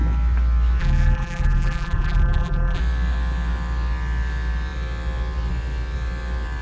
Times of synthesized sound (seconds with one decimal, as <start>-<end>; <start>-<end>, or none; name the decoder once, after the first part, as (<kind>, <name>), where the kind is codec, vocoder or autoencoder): 0.8-2.8 (vocoder, BigVGAN v2)